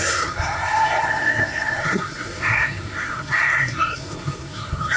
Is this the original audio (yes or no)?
no